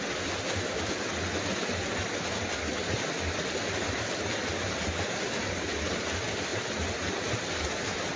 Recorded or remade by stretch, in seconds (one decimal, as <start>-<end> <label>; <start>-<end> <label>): 0.0-8.2 recorded